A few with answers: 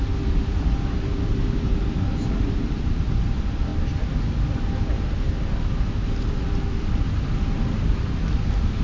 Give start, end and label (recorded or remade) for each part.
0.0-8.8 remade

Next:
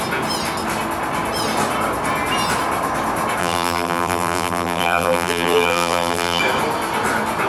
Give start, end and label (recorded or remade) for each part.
0.0-3.4 recorded; 3.4-6.4 remade; 6.4-7.5 recorded